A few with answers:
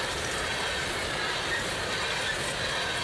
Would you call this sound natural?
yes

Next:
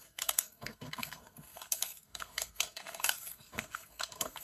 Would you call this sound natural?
no